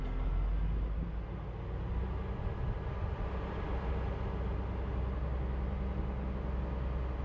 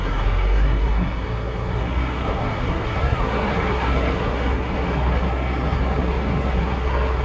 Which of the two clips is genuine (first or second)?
first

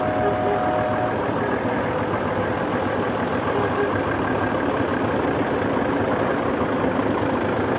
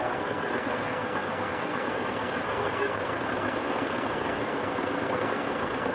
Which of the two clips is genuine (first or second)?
first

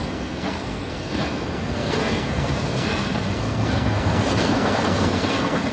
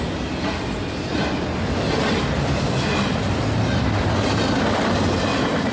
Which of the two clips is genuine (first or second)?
second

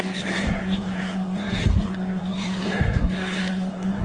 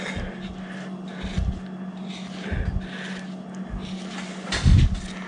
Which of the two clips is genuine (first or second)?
second